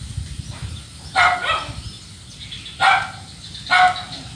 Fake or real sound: real